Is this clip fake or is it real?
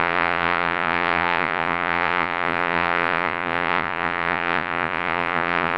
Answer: fake